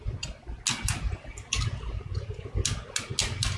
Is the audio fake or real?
real